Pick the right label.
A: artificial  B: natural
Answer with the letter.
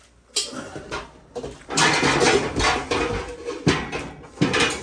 B